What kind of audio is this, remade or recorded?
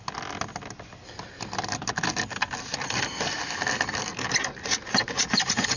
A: recorded